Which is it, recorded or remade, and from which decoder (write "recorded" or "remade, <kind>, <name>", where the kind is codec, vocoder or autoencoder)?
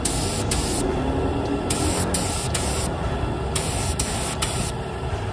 recorded